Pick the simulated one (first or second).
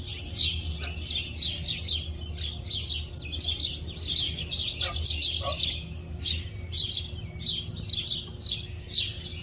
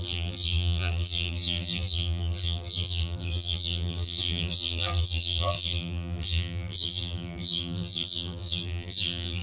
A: second